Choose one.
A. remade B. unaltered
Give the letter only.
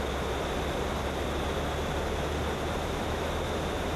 B